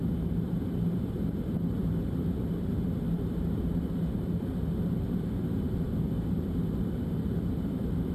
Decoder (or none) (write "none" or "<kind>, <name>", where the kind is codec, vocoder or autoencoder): vocoder, BigVGAN v2